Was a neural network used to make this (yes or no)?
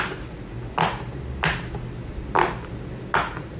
no